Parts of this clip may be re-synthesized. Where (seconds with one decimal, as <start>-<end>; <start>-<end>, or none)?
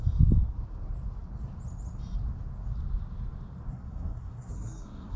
3.7-5.2